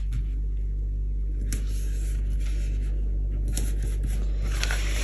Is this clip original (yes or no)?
yes